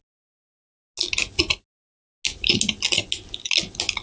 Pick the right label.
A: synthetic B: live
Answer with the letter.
B